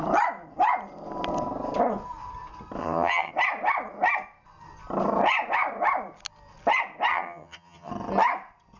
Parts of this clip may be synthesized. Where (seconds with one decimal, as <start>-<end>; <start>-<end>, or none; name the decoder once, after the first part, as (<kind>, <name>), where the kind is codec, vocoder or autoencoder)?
2.8-3.3 (vocoder, HiFi-GAN); 7.1-7.9